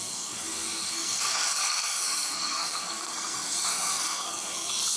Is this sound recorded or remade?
remade